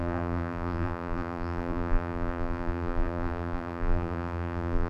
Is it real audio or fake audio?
fake